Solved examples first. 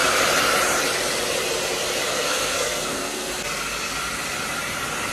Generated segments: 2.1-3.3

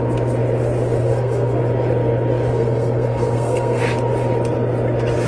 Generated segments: 1.0-1.6; 2.5-3.8

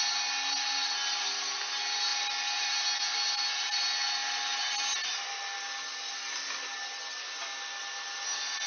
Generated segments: none

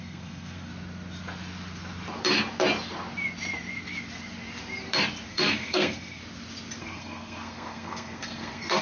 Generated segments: 0.0-0.7; 5.3-6.2; 6.8-8.8

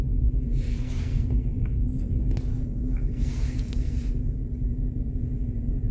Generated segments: 0.7-2.1; 2.5-4.0